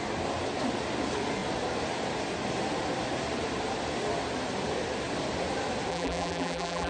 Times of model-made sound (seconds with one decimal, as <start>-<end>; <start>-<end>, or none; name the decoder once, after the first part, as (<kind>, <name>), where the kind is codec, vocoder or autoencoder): 5.9-6.9 (vocoder, BigVGAN v2)